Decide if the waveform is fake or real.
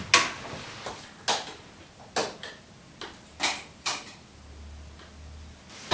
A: real